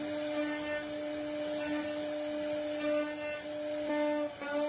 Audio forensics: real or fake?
real